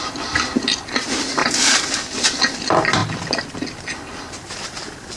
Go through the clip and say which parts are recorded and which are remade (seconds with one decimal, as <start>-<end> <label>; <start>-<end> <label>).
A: 0.0-1.4 recorded; 1.4-2.6 remade; 2.6-5.2 recorded